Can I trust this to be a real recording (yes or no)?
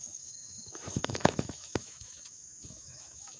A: no